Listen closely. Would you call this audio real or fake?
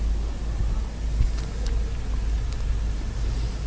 real